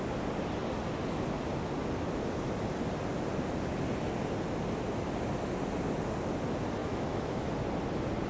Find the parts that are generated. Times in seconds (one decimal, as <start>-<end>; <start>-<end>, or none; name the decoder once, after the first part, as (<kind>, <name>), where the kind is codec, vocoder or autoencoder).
6.8-7.5 (autoencoder, DAC-VAE)